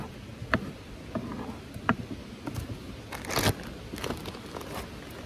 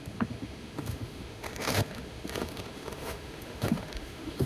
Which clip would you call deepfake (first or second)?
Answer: second